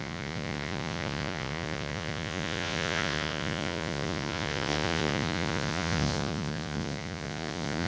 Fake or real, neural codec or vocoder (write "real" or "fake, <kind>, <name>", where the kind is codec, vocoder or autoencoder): fake, vocoder, Vocos